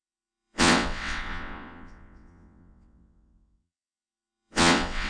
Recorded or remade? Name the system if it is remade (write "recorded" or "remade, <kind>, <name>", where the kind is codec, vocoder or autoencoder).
remade, vocoder, WaveNeXt